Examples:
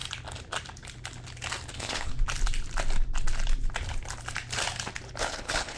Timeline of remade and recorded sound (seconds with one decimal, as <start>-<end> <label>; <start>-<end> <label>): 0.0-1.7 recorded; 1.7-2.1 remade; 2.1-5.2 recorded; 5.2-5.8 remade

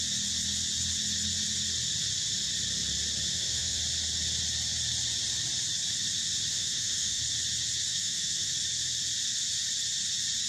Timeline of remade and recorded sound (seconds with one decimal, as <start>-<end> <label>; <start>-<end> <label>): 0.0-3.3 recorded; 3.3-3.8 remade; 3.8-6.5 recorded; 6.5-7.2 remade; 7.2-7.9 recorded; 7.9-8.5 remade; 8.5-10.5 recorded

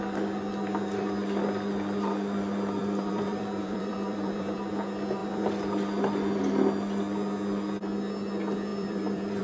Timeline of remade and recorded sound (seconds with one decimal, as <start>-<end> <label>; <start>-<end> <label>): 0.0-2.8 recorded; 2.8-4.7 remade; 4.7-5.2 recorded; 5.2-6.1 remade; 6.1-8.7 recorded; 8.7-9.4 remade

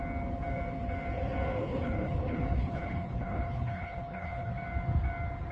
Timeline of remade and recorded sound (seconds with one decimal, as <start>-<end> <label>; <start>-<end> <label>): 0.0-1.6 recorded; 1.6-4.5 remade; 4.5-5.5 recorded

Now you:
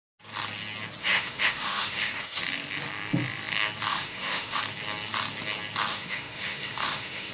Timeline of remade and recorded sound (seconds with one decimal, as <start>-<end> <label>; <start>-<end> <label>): 0.0-1.0 recorded; 1.0-2.4 remade; 2.4-3.9 recorded; 3.9-4.6 remade; 4.6-5.9 recorded; 5.9-7.3 remade

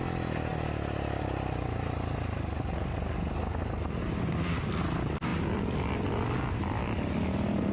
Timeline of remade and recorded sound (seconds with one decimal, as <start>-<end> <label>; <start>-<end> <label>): 0.0-7.7 recorded

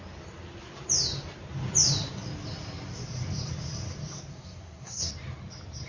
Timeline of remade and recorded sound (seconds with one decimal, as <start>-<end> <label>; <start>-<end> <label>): 0.0-4.3 recorded; 4.3-5.1 remade; 5.1-5.9 recorded

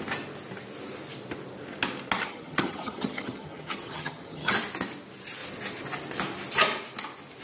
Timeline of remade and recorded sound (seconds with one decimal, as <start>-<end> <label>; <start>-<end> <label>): 0.0-2.3 recorded; 2.3-4.5 remade; 4.5-7.4 recorded